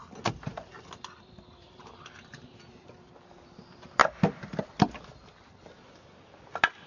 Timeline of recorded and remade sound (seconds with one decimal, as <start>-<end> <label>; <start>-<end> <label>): 0.0-6.9 recorded